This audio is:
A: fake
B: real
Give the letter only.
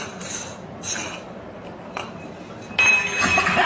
B